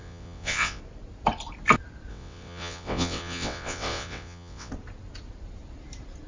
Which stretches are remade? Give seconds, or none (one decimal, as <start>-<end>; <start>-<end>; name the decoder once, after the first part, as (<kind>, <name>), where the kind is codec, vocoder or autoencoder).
0.0-0.8 (vocoder, WaveNeXt); 2.1-4.7